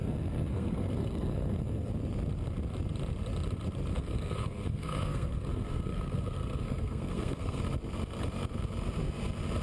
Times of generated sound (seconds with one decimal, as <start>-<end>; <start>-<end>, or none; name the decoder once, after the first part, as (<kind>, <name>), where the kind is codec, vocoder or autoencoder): 0.0-1.9 (codec, SNAC); 3.9-7.6